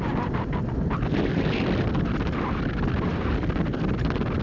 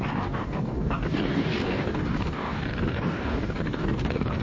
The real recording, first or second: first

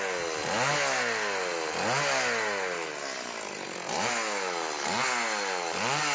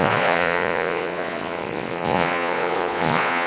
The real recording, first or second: first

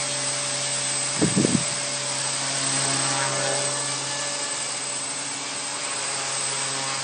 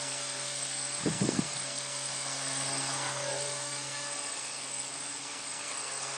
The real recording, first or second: first